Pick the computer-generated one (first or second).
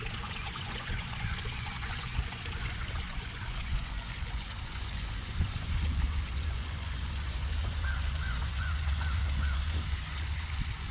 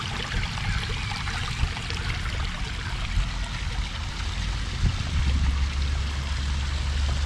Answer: first